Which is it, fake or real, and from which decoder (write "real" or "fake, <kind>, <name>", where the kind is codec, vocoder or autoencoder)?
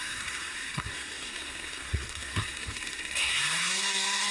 fake, codec, SNAC